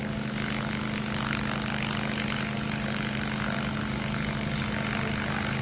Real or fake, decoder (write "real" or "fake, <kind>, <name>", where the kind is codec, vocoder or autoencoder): real